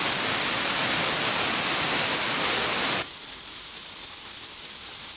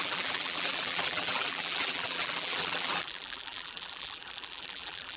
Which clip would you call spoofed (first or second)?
second